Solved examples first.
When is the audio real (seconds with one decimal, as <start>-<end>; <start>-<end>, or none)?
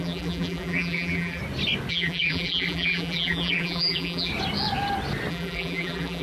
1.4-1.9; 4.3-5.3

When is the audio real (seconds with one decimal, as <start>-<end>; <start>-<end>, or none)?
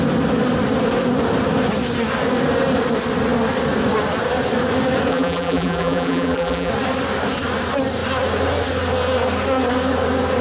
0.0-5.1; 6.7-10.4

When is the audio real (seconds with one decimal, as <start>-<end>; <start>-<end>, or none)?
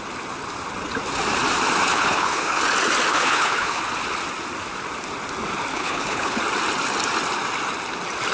0.0-1.9; 2.6-3.1; 3.8-5.7; 6.4-8.3